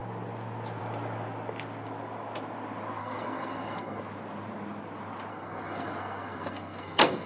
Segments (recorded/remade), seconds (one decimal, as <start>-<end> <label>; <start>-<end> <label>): 0.0-3.0 recorded; 3.0-4.0 remade; 4.0-5.3 recorded; 5.3-7.3 remade